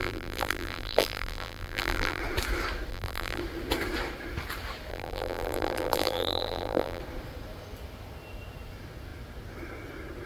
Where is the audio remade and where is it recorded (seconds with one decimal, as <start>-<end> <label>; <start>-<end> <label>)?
0.0-2.2 remade; 2.2-2.9 recorded; 2.9-3.4 remade; 3.4-4.9 recorded; 4.9-7.0 remade; 7.0-10.3 recorded